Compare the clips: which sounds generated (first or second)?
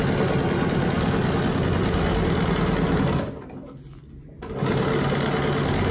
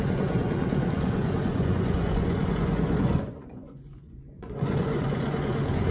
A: second